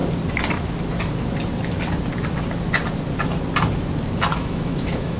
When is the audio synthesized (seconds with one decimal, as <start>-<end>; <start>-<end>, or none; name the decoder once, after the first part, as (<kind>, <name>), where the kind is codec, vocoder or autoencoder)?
4.3-5.2 (autoencoder, DAC-VAE)